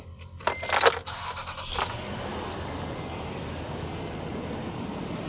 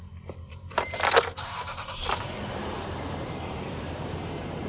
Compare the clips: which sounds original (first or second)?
first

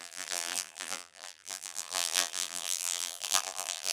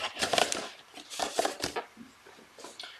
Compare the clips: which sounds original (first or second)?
second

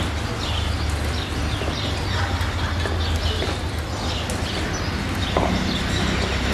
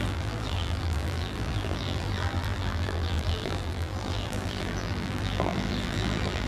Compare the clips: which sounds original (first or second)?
first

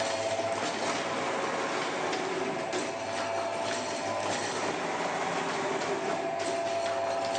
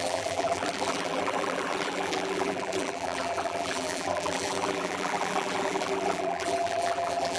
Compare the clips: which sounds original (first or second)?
first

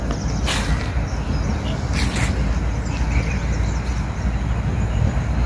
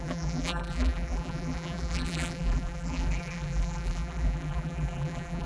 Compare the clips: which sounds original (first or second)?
first